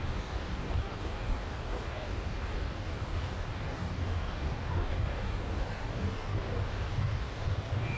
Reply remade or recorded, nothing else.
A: remade